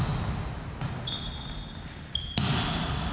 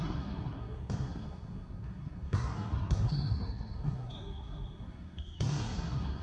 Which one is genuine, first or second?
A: first